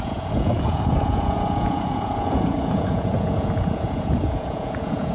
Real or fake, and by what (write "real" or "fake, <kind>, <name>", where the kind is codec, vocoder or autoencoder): fake, vocoder, Vocos